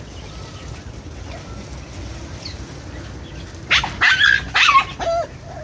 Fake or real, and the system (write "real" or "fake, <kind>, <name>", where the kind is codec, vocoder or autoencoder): real